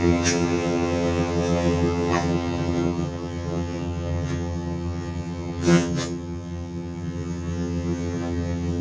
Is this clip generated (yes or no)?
yes